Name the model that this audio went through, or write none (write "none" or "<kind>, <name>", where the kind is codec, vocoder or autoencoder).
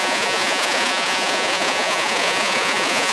vocoder, Vocos